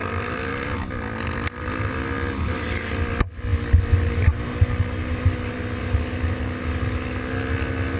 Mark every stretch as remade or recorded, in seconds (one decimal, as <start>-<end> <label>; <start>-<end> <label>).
0.0-8.0 recorded

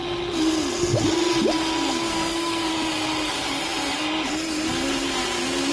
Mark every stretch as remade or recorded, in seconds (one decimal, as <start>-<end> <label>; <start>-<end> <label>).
0.0-2.1 recorded; 2.1-2.7 remade; 2.7-5.7 recorded

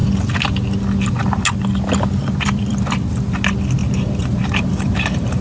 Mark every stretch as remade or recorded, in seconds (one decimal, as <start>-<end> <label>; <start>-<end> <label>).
0.0-3.8 recorded; 3.8-5.4 remade

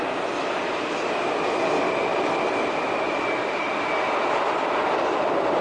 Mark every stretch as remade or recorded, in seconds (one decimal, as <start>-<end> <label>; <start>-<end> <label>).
0.0-5.6 recorded